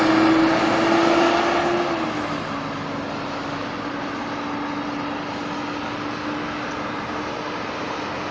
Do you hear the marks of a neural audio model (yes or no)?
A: no